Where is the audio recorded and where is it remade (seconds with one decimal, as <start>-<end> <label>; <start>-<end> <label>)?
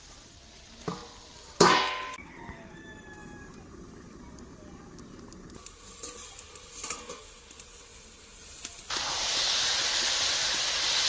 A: 0.0-11.1 recorded